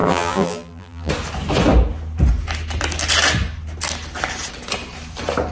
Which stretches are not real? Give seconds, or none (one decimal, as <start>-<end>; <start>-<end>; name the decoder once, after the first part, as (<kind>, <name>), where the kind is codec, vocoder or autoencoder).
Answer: 0.0-1.1 (vocoder, BigVGAN v2)